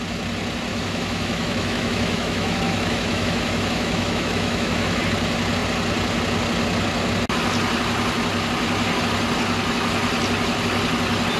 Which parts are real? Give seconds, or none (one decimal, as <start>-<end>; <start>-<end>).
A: 0.0-0.7; 5.0-11.4